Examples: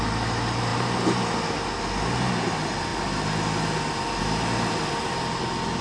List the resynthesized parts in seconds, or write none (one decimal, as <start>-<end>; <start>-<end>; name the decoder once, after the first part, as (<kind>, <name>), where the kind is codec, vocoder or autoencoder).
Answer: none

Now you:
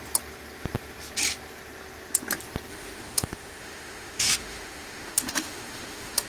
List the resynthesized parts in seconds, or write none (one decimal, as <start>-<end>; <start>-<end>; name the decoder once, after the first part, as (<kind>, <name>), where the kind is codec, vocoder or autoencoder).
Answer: 2.7-6.3 (autoencoder, DAC-VAE)

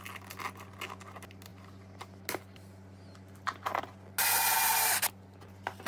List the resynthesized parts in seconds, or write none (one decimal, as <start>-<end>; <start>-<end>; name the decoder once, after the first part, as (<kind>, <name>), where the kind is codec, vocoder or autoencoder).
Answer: none

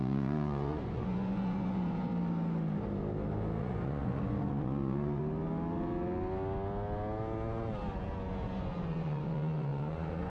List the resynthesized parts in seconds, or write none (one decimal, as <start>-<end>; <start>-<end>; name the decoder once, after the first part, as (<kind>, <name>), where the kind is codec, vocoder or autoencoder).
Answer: 0.0-2.1 (vocoder, Vocos); 3.6-5.2; 8.3-10.3

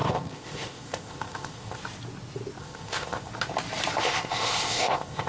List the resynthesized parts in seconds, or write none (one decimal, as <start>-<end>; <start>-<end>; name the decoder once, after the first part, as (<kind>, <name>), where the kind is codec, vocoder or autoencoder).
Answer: 0.0-1.8 (codec, ZipCodec); 2.6-3.3; 4.0-5.3

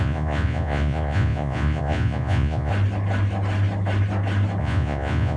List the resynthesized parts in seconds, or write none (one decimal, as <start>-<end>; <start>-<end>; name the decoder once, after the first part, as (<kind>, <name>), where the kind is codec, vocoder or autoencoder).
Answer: 0.0-2.7 (vocoder, Vocos); 4.6-5.4

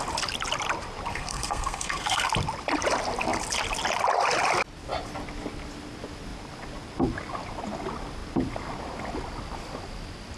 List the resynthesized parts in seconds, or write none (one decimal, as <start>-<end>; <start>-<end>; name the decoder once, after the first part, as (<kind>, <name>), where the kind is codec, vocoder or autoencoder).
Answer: 1.1-2.3 (codec, SNAC)